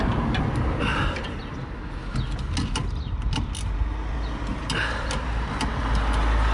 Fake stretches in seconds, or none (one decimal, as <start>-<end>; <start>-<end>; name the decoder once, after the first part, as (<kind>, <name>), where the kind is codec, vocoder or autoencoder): 4.5-5.6 (vocoder, BigVGAN v2)